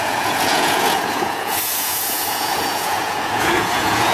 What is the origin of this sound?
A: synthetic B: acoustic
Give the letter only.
A